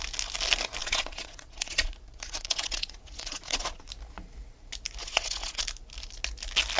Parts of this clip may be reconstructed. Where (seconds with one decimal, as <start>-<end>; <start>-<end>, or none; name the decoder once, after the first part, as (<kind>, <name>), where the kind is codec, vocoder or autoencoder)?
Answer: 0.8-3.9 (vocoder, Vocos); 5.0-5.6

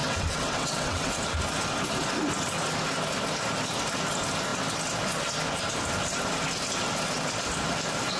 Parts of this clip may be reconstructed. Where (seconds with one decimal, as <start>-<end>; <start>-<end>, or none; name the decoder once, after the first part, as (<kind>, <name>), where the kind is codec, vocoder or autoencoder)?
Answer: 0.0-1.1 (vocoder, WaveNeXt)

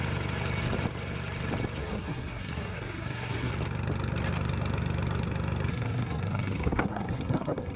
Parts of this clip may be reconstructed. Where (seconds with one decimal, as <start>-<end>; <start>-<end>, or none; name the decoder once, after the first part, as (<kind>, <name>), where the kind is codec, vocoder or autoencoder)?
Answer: 1.8-3.5 (codec, SNAC); 5.7-7.8